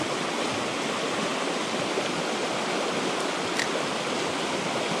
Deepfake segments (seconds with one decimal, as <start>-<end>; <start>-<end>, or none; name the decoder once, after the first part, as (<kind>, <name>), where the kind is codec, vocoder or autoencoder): none